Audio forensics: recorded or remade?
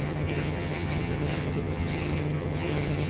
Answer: remade